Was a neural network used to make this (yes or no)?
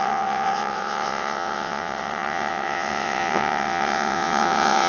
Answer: yes